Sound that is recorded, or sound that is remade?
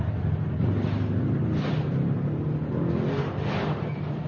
recorded